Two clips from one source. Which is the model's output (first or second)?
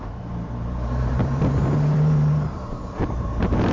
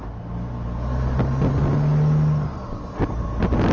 first